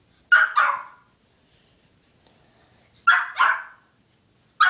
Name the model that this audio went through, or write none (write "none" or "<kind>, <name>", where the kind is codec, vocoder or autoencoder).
none